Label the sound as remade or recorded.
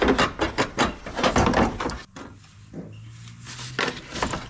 recorded